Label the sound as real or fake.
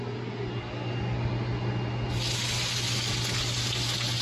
real